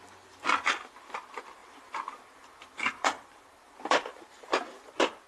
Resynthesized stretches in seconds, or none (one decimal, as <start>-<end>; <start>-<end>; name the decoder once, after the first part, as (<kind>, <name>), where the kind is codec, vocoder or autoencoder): 1.6-4.6 (vocoder, BigVGAN v2)

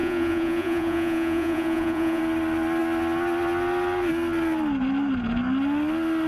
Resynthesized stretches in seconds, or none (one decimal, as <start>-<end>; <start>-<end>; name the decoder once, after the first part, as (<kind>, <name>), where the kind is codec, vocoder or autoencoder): 0.0-2.2 (vocoder, Vocos)

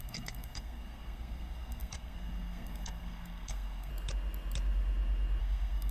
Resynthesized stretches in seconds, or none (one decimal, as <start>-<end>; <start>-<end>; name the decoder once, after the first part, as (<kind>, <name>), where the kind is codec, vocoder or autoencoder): 0.0-3.9 (codec, SNAC); 5.4-5.9

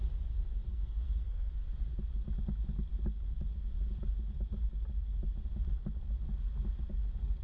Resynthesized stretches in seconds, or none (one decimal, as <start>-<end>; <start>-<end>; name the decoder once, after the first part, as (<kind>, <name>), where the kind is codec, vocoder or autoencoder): 0.7-1.5 (codec, SNAC)

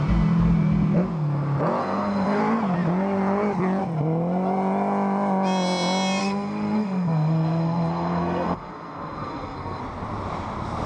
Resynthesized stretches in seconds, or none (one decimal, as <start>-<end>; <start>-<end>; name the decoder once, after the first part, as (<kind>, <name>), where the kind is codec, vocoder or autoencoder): 1.8-2.4 (codec, SNAC); 6.2-9.8

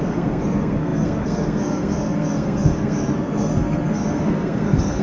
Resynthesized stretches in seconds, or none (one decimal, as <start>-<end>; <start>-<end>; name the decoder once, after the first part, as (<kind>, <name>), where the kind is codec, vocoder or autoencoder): 0.0-5.0 (codec, SNAC)